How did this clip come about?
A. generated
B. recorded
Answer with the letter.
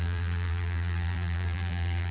A